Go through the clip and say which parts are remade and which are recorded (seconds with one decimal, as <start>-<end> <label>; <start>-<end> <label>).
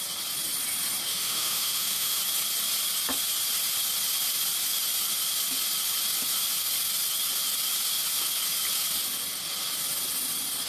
0.0-1.1 recorded; 1.1-2.2 remade; 2.2-10.7 recorded